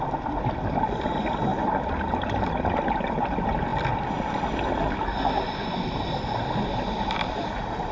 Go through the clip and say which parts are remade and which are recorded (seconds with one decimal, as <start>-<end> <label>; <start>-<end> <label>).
0.0-7.9 recorded